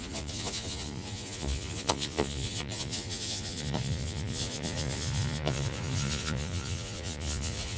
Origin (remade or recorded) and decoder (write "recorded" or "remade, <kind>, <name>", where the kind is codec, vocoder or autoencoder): remade, vocoder, Vocos